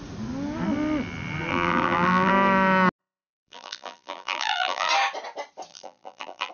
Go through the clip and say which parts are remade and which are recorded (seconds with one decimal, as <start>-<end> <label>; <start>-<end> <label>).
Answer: 0.0-1.5 recorded; 1.5-2.3 remade; 2.3-3.0 recorded; 3.0-4.9 remade; 4.9-5.7 recorded; 5.7-6.5 remade